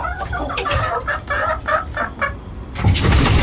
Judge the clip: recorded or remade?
remade